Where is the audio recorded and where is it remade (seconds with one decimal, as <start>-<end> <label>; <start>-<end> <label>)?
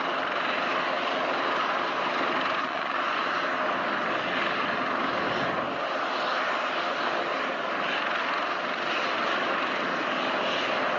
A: 0.0-2.6 recorded; 2.6-3.4 remade; 3.4-11.0 recorded